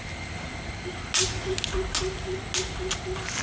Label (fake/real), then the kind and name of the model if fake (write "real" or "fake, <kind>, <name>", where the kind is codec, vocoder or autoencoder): real